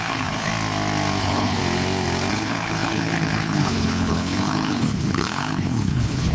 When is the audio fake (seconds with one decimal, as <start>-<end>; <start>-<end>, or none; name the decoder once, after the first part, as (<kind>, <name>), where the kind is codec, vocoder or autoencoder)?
0.0-0.5 (codec, HILCodec); 1.2-1.6; 2.3-6.3